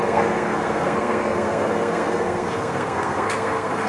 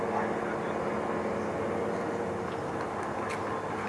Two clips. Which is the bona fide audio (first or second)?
second